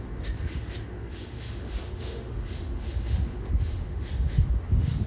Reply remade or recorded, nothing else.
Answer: remade